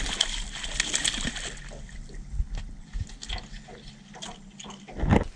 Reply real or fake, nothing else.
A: real